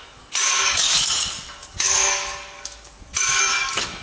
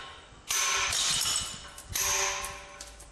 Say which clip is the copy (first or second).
first